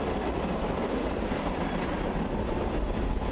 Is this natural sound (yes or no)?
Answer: yes